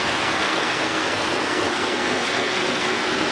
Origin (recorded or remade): remade